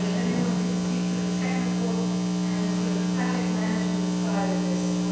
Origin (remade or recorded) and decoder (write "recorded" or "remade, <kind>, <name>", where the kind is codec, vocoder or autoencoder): recorded